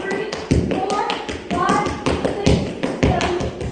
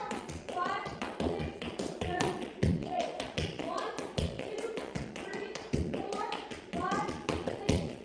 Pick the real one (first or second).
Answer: first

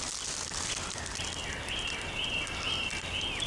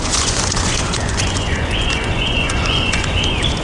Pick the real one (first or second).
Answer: first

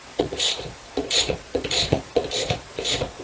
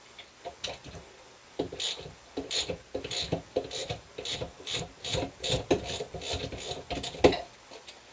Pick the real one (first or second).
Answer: second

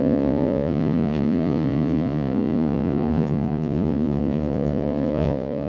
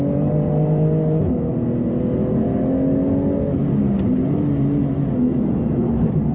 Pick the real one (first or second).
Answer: second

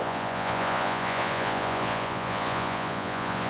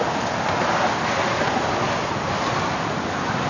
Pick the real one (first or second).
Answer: second